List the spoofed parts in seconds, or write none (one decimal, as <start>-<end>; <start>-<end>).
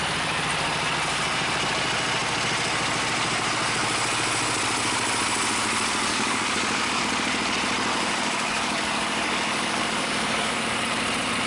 6.1-7.0; 7.9-10.8